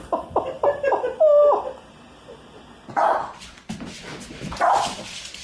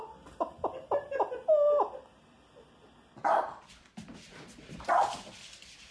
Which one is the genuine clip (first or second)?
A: first